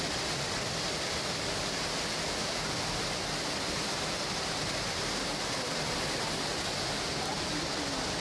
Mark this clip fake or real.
real